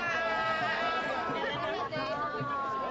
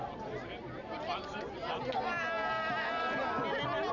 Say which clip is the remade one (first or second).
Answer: first